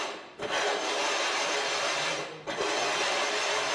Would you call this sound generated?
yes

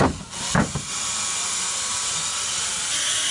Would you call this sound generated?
no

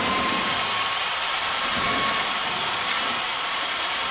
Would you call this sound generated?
yes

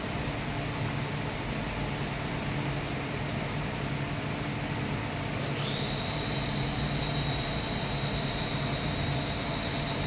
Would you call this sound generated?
no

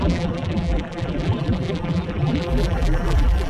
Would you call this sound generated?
yes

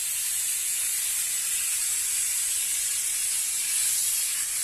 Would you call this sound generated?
no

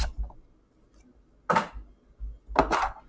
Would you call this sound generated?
no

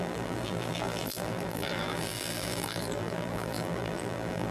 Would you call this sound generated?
yes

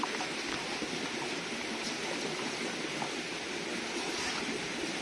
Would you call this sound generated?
no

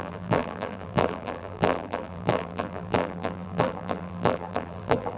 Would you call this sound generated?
yes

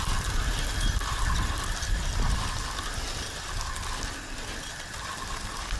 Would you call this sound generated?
no